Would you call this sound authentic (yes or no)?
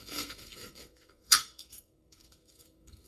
no